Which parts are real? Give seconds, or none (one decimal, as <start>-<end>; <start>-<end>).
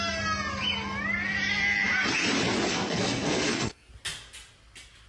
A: 0.0-2.7; 3.9-5.1